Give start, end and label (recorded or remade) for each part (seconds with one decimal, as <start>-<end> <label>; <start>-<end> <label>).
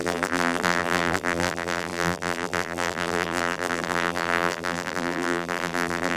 0.0-6.2 remade